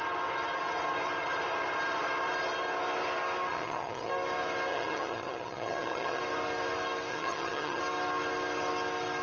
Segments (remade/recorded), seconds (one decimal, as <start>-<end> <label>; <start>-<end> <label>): 0.0-3.5 recorded; 3.5-4.1 remade; 4.1-4.7 recorded; 4.7-6.2 remade; 6.2-7.1 recorded; 7.1-7.8 remade; 7.8-9.2 recorded